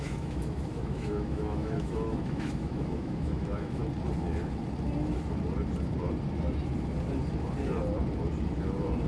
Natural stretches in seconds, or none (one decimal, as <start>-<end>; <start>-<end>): 3.8-9.1